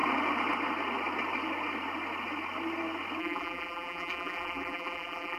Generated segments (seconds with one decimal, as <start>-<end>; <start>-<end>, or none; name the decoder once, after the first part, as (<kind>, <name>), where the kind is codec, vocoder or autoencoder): 3.2-5.4 (vocoder, BigVGAN v2)